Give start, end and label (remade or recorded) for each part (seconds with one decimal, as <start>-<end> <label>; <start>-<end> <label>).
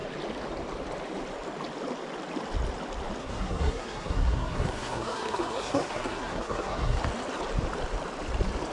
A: 0.0-3.2 recorded; 3.2-7.0 remade; 7.0-8.7 recorded